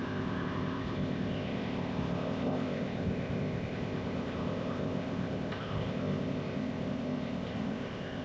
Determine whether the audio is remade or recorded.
remade